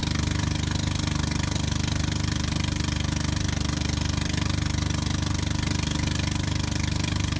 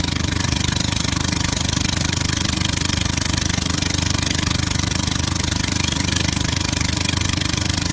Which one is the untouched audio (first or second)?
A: first